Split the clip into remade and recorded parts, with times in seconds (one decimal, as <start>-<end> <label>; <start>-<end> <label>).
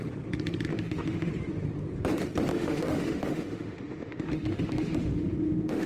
0.0-0.7 recorded; 0.7-1.3 remade; 1.3-2.5 recorded; 2.5-5.9 remade